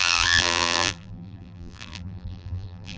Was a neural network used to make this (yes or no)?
yes